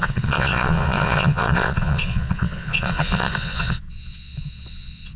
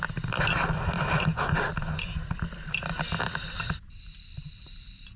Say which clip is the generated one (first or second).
first